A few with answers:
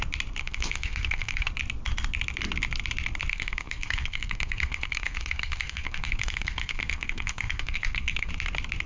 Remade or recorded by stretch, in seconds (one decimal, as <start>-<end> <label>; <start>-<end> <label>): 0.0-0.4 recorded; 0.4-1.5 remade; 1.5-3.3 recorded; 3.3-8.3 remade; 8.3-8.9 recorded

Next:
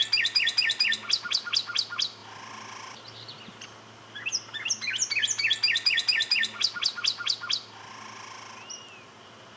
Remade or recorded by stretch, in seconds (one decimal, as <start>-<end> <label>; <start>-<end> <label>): 0.0-9.6 recorded

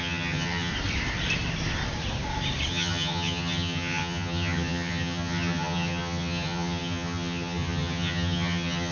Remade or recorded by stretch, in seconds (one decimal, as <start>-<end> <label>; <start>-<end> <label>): 0.0-0.7 remade; 0.7-2.7 recorded; 2.7-8.9 remade

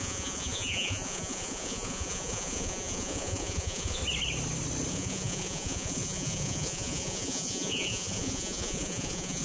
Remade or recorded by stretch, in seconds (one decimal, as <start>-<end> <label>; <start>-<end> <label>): 0.0-4.0 remade; 4.0-4.9 recorded; 4.9-9.4 remade

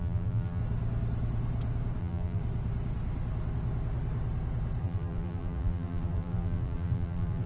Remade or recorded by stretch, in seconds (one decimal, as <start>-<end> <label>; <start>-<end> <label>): 0.0-0.6 remade; 0.6-2.0 recorded; 2.0-2.4 remade; 2.4-4.8 recorded; 4.8-7.5 remade

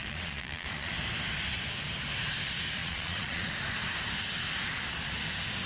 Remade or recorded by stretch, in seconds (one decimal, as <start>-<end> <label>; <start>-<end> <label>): 0.0-0.9 remade; 0.9-2.8 recorded; 2.8-3.5 remade; 3.5-5.7 recorded

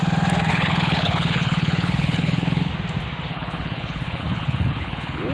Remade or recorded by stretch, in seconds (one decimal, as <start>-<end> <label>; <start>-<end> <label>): 0.0-0.5 recorded; 0.5-2.7 remade; 2.7-3.3 recorded; 3.3-5.3 remade

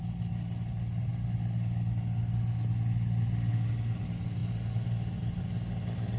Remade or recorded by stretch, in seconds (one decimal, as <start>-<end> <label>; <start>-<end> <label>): 0.0-6.2 recorded